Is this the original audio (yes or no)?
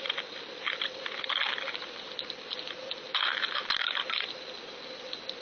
yes